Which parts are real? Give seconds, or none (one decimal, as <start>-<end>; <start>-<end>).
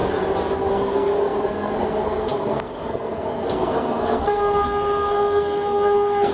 0.0-0.7